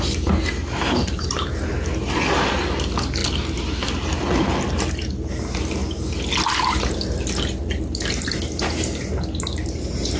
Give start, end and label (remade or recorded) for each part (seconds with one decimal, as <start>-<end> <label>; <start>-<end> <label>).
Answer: 0.0-10.2 recorded